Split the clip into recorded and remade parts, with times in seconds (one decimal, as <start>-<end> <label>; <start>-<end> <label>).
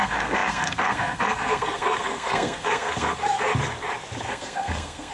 0.0-3.5 remade; 3.5-4.2 recorded; 4.2-5.1 remade